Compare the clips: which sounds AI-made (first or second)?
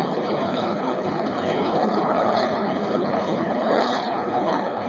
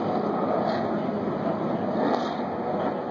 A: first